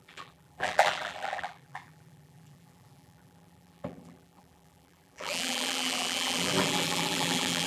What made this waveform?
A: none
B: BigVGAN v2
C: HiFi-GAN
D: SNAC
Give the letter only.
B